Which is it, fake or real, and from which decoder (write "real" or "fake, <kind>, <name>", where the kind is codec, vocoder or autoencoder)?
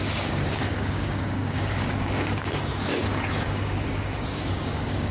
fake, codec, DAC